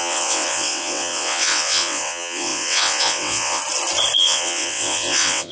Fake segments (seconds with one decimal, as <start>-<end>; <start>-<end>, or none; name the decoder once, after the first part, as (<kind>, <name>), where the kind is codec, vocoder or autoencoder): 0.0-3.6 (vocoder, WaveNeXt); 4.2-5.5